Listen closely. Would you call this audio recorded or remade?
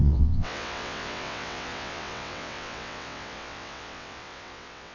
remade